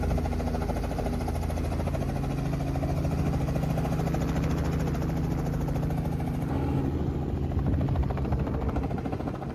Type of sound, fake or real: real